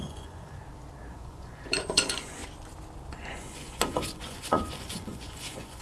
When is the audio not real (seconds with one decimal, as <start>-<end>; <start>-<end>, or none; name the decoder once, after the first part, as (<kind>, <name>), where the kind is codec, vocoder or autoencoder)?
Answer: 0.0-0.6 (vocoder, Vocos); 1.1-2.4; 3.1-5.8